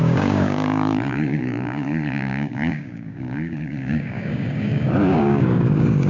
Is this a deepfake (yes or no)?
yes